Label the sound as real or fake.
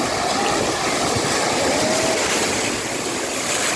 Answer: real